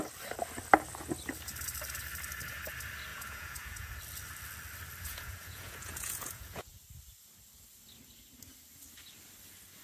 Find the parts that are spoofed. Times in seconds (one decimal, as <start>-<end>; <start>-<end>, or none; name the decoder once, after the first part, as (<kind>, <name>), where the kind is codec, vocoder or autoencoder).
3.1-3.9 (vocoder, Vocos); 5.0-6.8